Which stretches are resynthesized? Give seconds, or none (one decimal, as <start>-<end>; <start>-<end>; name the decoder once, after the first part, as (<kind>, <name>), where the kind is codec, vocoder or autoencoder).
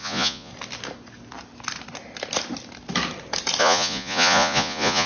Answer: 0.0-0.5 (vocoder, Vocos); 3.6-5.1